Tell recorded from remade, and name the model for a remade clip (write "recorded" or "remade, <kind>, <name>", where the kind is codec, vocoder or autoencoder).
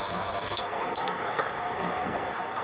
remade, codec, SNAC